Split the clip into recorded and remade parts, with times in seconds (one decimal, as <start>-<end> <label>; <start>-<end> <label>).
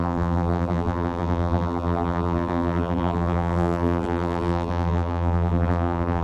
0.0-6.2 remade